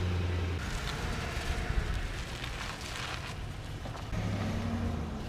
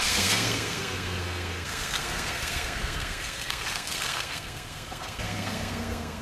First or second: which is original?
first